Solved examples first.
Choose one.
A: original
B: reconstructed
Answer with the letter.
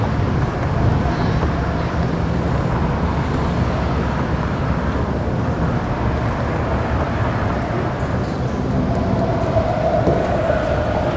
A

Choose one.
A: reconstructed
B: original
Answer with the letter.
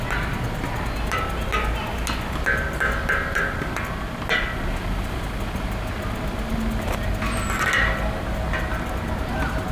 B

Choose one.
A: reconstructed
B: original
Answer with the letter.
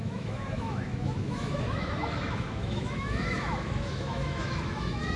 A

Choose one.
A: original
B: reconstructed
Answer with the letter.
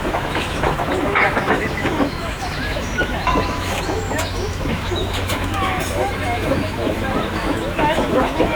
B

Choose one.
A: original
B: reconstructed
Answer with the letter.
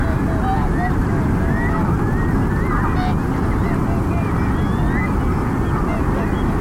A